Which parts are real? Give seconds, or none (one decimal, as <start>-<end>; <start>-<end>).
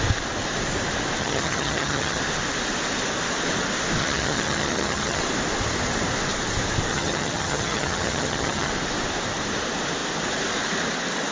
0.0-1.2; 2.2-4.0; 5.2-6.9; 8.7-11.3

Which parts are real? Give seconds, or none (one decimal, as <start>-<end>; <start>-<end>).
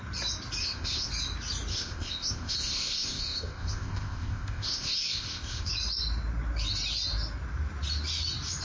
0.0-0.6; 1.1-1.7; 5.7-8.6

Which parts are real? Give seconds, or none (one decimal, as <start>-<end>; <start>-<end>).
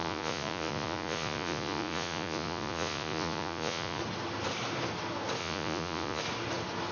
4.0-5.4; 6.2-6.9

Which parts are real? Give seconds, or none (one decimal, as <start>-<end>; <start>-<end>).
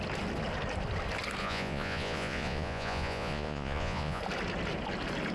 0.0-1.4; 4.2-5.3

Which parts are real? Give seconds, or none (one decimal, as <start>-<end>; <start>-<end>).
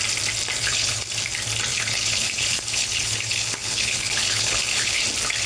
0.0-0.6; 1.1-1.7; 5.0-5.5